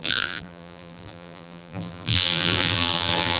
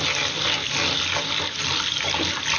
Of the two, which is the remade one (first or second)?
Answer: first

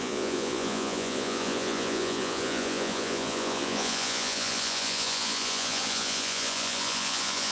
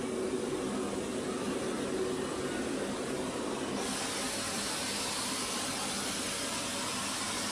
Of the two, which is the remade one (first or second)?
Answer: first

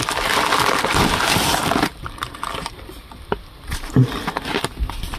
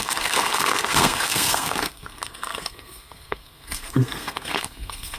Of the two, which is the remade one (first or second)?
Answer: second